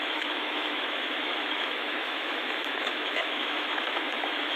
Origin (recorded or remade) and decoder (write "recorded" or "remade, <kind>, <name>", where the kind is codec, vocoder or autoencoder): remade, autoencoder, DAC-VAE